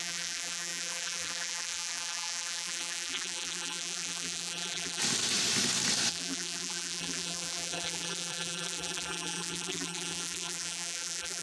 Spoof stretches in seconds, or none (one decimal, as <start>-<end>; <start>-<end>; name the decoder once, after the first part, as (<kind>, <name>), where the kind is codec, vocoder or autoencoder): 0.0-5.0 (vocoder, BigVGAN v2); 6.1-11.4